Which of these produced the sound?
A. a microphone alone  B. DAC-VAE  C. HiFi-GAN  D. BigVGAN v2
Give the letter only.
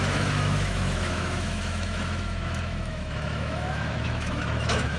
B